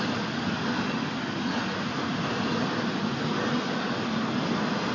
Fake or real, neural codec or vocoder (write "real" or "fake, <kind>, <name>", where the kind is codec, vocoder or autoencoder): real